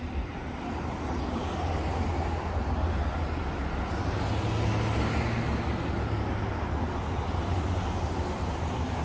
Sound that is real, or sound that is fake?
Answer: real